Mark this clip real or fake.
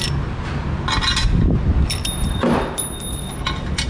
real